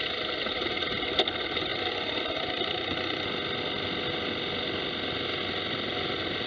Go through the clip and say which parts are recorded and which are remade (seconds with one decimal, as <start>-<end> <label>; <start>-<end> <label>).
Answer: 0.0-6.5 recorded

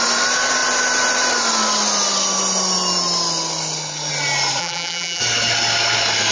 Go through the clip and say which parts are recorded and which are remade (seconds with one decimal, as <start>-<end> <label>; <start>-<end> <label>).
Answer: 0.0-4.6 recorded; 4.6-5.2 remade; 5.2-6.3 recorded

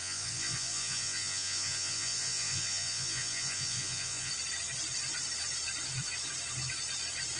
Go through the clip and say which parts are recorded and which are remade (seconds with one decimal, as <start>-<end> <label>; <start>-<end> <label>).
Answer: 0.0-4.3 remade; 4.3-7.4 recorded

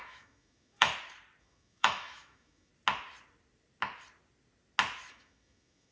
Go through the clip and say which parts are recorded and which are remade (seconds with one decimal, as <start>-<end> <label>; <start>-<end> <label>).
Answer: 0.0-0.9 remade; 0.9-1.4 recorded; 1.4-2.7 remade; 2.7-5.1 recorded; 5.1-5.9 remade